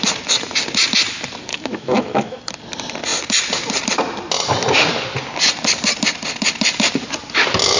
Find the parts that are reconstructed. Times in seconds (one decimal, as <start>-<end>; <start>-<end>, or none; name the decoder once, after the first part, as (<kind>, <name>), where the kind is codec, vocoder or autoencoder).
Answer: 1.5-2.4 (autoencoder, DAC-VAE)